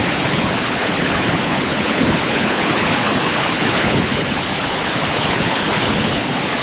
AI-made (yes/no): yes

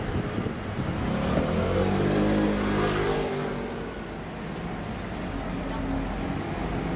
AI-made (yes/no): no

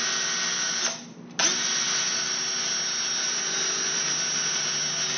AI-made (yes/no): no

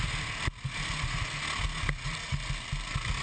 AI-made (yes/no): no